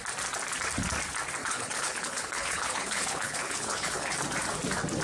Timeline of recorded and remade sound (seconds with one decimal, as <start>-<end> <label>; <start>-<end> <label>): 0.0-1.4 recorded; 1.4-4.1 remade; 4.1-5.0 recorded